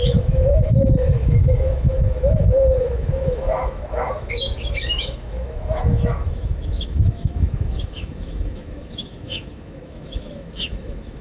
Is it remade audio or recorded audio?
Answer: remade